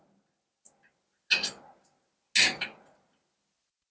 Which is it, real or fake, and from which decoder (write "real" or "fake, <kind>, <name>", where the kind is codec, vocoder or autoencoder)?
real